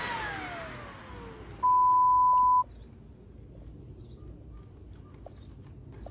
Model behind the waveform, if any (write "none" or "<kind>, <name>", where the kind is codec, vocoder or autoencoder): none